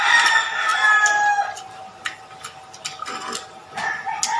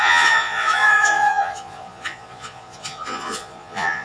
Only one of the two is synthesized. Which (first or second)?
second